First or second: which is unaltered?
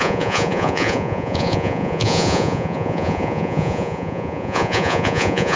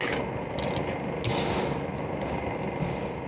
second